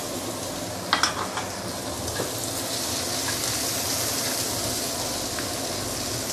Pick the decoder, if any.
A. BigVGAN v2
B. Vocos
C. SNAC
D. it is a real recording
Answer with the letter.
D